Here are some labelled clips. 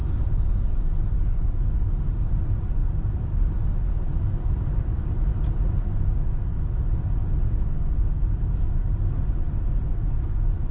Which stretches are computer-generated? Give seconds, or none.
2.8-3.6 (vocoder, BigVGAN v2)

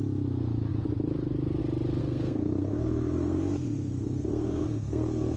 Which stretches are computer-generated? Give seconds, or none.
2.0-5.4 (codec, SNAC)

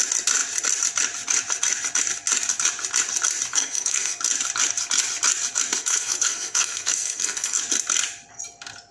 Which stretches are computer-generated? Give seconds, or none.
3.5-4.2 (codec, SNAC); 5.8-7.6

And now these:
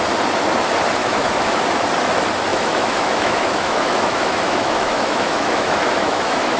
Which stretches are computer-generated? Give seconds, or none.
1.0-1.6 (autoencoder, DAC-VAE); 2.5-6.6

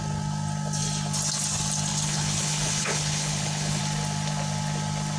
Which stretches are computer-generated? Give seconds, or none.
1.9-3.8 (codec, HILCodec)

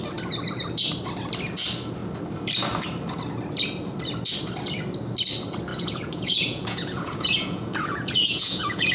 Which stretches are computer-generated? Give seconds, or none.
5.7-8.9 (vocoder, Vocos)

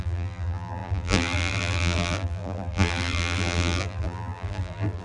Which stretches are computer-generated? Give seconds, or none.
0.0-5.0 (vocoder, BigVGAN v2)

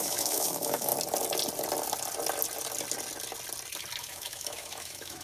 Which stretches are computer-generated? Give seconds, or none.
0.0-0.9 (autoencoder, DAC-VAE); 4.0-5.2